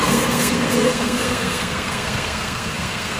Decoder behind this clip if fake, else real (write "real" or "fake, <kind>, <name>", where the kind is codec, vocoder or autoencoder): fake, codec, SNAC